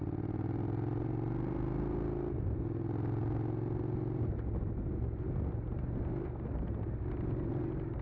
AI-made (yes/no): no